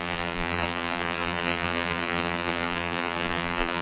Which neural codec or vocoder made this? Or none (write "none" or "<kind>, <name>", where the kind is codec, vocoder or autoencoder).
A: vocoder, BigVGAN v2